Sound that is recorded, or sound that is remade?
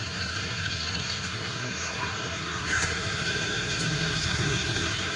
remade